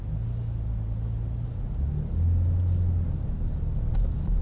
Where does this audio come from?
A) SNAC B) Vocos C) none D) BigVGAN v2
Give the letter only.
C